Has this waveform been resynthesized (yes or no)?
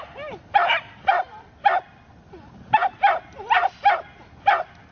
no